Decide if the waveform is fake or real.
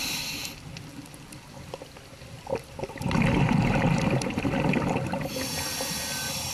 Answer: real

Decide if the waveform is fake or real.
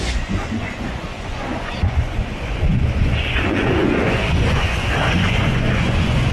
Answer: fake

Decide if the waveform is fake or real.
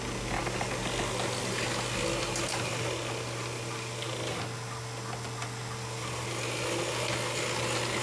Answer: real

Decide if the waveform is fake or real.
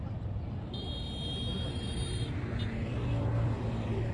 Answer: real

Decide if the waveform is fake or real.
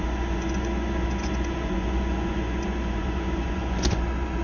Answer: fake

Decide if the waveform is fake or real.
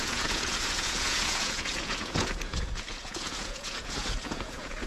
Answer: fake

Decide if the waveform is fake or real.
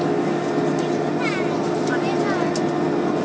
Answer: real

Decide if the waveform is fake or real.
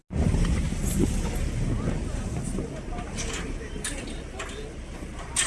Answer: real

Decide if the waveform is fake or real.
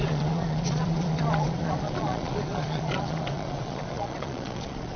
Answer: fake